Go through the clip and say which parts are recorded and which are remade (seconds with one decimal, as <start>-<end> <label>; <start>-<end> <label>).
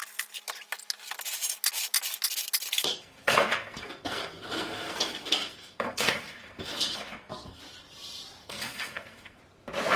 0.0-2.8 recorded; 2.8-7.6 remade; 7.6-8.4 recorded; 8.4-9.4 remade; 9.4-10.0 recorded